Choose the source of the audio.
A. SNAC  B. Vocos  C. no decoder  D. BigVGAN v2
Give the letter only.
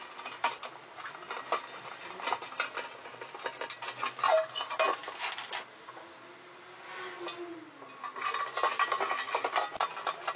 C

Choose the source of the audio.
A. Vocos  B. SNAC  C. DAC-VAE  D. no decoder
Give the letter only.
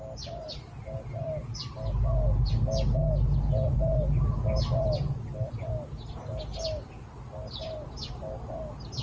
D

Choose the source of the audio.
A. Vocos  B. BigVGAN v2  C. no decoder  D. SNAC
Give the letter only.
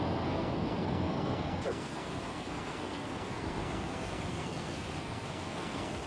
D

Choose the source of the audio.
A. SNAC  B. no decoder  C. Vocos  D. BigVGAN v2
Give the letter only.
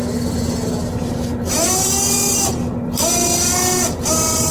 B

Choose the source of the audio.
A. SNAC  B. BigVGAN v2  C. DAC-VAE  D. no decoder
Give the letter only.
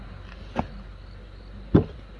D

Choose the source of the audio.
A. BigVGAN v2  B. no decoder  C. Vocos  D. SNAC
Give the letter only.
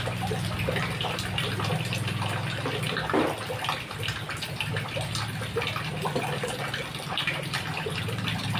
B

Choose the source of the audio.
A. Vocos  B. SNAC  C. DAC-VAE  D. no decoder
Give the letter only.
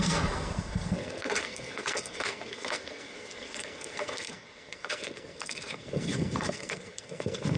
B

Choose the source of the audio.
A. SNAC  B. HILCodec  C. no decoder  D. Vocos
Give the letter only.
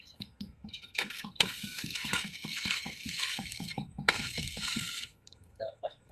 A